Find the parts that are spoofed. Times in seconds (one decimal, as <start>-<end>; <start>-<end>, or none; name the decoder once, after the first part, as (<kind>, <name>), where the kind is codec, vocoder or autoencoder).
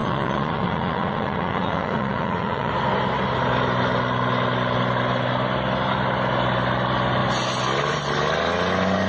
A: 0.0-2.7 (vocoder, Vocos)